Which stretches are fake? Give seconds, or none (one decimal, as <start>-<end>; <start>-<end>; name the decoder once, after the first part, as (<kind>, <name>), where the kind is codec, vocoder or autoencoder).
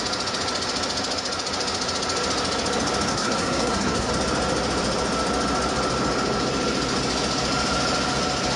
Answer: 3.1-4.1 (codec, SNAC)